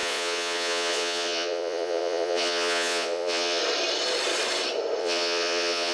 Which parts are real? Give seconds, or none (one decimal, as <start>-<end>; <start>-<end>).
3.6-5.0